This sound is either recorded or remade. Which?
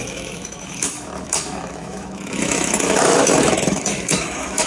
remade